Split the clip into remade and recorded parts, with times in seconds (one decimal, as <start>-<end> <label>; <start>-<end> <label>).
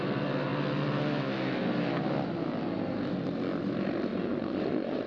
0.0-4.1 recorded; 4.1-5.1 remade